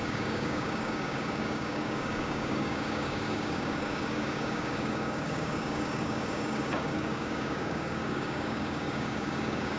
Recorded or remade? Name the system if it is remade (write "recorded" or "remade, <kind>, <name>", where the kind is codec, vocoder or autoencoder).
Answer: remade, codec, DAC